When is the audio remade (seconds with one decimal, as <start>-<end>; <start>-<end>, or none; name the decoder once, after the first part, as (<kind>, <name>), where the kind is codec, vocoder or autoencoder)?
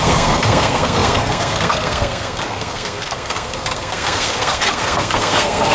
0.0-5.7 (codec, SNAC)